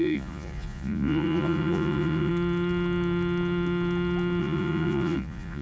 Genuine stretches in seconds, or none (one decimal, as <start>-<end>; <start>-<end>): 2.3-4.4